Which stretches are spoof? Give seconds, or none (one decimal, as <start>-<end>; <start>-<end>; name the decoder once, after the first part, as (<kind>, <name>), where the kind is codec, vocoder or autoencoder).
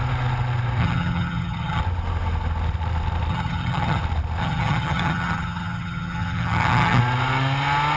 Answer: 0.8-1.8 (vocoder, HiFi-GAN); 3.3-4.0; 4.4-7.0